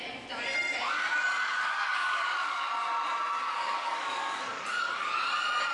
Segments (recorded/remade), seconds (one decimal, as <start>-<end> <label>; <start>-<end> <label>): 0.0-1.5 recorded; 1.5-2.7 remade; 2.7-3.4 recorded; 3.4-4.7 remade; 4.7-5.7 recorded